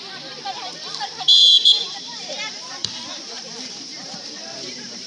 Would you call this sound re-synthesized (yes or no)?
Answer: yes